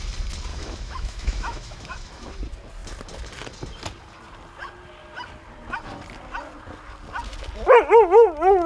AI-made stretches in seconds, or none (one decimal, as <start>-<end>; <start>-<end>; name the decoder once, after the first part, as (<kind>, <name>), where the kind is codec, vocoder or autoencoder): 0.5-2.3 (autoencoder, DAC-VAE)